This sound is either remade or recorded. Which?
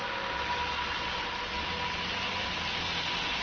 recorded